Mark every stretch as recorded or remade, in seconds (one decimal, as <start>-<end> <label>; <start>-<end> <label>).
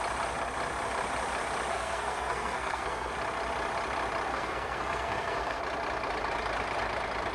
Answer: 0.0-1.7 recorded; 1.7-3.1 remade; 3.1-4.3 recorded; 4.3-5.6 remade; 5.6-7.3 recorded